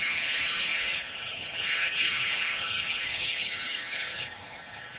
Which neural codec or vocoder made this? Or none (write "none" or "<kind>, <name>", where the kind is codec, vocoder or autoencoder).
codec, HILCodec